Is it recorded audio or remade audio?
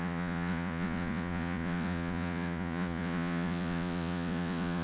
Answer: remade